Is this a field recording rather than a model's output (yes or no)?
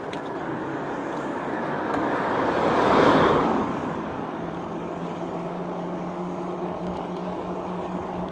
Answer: no